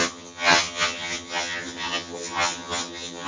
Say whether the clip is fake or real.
fake